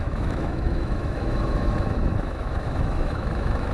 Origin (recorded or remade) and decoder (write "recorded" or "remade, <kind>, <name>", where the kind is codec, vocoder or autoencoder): remade, autoencoder, DAC-VAE